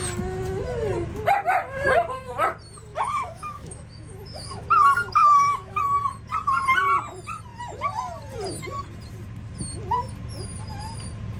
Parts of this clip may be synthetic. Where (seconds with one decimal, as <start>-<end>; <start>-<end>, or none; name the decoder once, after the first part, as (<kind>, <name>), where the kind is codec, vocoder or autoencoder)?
2.9-4.7 (autoencoder, DAC-VAE); 5.2-5.8